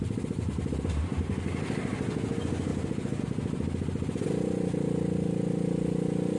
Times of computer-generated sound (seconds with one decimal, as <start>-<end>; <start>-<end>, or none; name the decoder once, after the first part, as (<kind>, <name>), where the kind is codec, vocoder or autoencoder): none